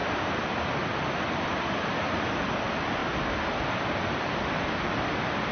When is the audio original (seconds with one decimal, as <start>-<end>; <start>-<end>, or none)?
0.0-5.5